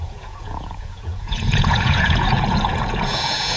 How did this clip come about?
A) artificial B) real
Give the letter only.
A